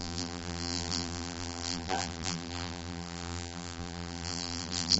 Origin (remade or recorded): remade